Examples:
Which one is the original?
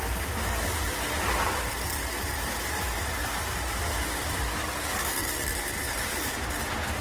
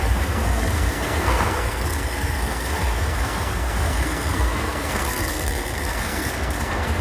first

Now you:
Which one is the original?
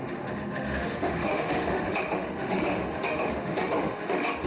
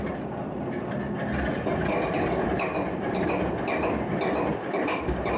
second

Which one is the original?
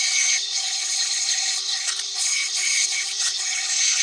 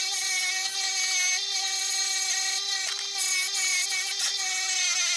second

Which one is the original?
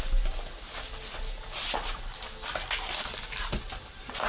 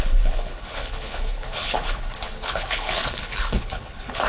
first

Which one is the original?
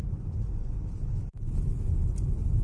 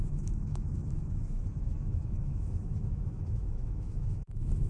first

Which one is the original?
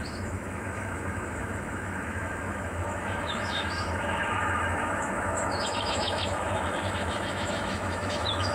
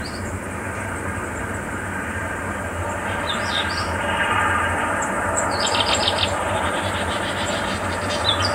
second